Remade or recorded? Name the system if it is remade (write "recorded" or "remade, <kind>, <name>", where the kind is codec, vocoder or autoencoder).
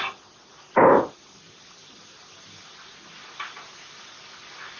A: recorded